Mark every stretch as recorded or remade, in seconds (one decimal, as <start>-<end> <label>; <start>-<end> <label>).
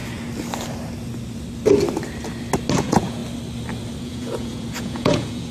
0.0-2.7 recorded; 2.7-3.2 remade; 3.2-4.0 recorded; 4.0-5.5 remade